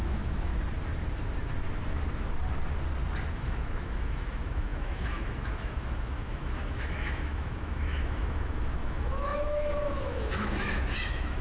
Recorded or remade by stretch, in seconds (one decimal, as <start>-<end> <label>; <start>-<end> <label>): 0.0-0.5 remade; 0.5-3.3 recorded; 3.3-11.4 remade

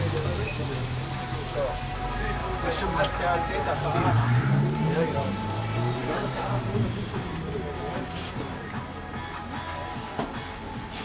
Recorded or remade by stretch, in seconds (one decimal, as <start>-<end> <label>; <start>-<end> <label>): 0.0-2.4 recorded; 2.4-3.1 remade; 3.1-3.9 recorded; 3.9-7.4 remade; 7.4-11.0 recorded

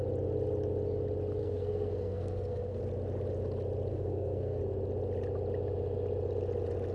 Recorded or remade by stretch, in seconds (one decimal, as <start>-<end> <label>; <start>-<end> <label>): 0.0-1.4 recorded; 1.4-2.8 remade; 2.8-3.9 recorded; 3.9-4.6 remade; 4.6-6.9 recorded

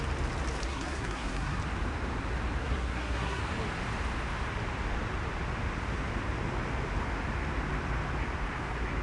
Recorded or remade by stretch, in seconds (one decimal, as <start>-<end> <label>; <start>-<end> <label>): 0.0-0.7 recorded; 0.7-1.6 remade; 1.6-2.6 recorded; 2.6-3.4 remade; 3.4-9.0 recorded

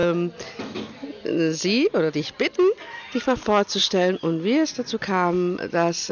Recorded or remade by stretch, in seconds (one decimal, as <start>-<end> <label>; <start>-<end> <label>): 0.0-6.1 recorded